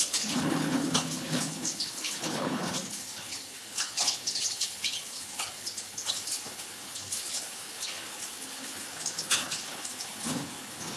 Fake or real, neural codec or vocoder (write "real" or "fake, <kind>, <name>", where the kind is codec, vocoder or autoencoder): fake, codec, HILCodec